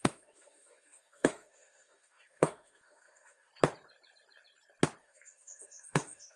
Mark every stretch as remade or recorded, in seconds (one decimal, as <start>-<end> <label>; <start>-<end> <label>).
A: 0.0-3.5 remade; 3.5-5.0 recorded; 5.0-6.4 remade